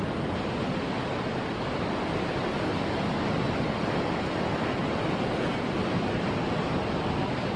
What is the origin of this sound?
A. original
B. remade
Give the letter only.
A